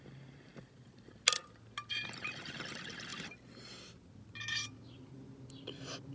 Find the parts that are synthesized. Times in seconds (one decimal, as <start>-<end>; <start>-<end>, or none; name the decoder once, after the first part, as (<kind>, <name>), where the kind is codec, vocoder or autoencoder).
none